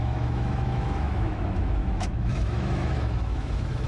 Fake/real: fake